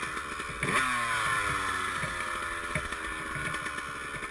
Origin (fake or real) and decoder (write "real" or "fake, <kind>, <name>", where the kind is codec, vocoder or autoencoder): real